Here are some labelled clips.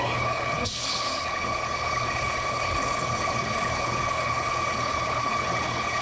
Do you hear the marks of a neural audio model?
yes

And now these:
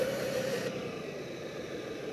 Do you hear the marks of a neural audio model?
yes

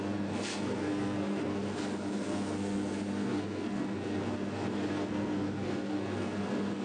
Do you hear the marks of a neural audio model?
yes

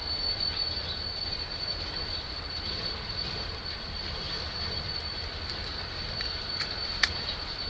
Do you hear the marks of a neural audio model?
no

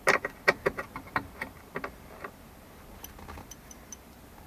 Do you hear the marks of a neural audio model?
yes